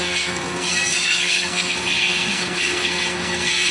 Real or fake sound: fake